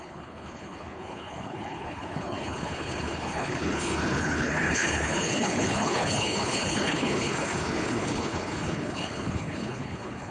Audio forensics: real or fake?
fake